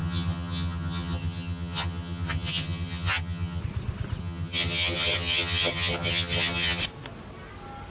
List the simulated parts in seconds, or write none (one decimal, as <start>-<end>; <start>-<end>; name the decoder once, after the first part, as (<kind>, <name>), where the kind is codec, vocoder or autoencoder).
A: 0.0-3.6 (vocoder, HiFi-GAN); 4.2-6.8